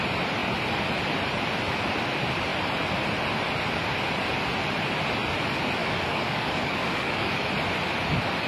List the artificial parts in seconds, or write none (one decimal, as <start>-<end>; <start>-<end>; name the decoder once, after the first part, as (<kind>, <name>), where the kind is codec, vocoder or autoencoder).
5.8-7.4 (codec, DAC)

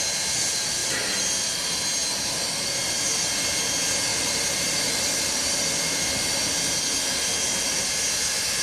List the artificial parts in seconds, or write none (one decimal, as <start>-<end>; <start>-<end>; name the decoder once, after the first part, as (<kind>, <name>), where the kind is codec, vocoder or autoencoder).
0.8-1.3 (vocoder, BigVGAN v2); 4.1-5.4

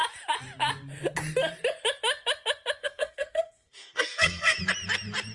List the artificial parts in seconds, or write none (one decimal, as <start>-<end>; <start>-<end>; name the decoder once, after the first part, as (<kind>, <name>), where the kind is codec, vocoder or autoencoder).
2.8-4.6 (codec, SNAC)

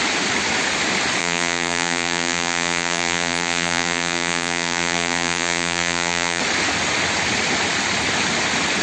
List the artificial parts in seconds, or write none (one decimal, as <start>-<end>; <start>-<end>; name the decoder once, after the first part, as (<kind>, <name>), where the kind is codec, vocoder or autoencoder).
1.2-6.4 (vocoder, BigVGAN v2)

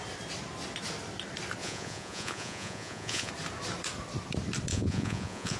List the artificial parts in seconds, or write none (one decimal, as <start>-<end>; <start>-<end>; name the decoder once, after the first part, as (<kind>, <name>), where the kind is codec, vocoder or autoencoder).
1.6-3.3 (vocoder, Vocos); 4.7-5.6

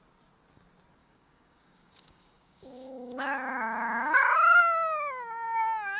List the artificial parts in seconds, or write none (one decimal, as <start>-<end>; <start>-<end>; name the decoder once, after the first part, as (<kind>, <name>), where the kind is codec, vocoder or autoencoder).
1.0-4.6 (codec, DAC)

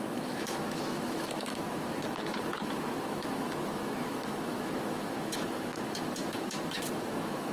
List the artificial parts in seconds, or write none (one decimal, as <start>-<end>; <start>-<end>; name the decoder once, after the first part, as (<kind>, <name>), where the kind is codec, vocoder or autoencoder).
0.0-7.5 (autoencoder, DAC-VAE)

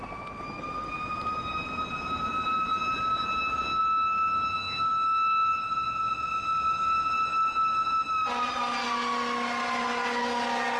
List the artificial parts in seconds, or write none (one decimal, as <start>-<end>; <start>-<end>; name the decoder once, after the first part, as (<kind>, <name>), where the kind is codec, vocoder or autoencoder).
none